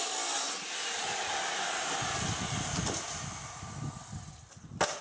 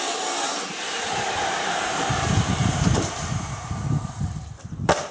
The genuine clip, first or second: first